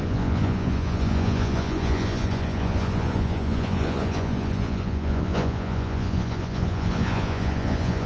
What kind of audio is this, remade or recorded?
remade